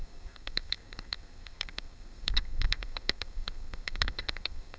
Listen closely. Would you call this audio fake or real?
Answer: fake